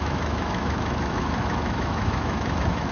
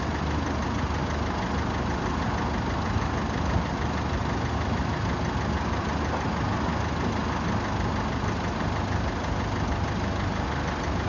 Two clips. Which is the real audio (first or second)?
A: second